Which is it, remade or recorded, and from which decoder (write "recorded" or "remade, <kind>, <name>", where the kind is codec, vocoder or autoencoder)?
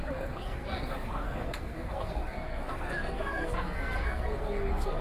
remade, codec, SNAC